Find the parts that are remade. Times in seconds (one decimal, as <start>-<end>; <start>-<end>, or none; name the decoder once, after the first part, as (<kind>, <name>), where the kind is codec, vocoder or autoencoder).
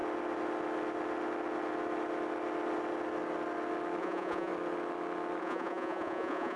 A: 4.0-4.5 (vocoder, Vocos); 5.4-6.6